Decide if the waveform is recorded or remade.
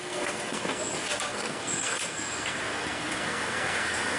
remade